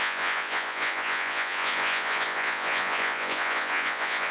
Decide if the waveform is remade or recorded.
remade